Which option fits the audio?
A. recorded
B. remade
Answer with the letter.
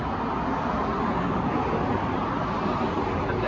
A